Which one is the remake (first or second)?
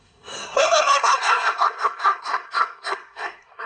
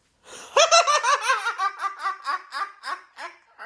first